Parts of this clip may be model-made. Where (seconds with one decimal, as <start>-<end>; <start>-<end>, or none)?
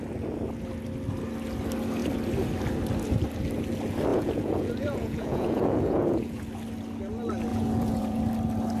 4.1-6.4; 7.5-8.2